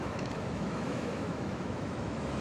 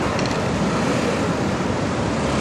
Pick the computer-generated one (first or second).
first